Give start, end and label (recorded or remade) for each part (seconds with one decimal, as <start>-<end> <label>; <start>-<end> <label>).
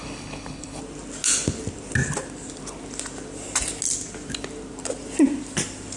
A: 0.0-0.8 remade; 0.8-6.0 recorded